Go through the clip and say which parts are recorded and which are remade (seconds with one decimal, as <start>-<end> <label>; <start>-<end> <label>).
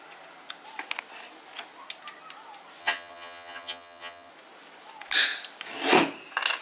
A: 0.0-2.8 recorded; 2.8-4.3 remade; 4.3-6.6 recorded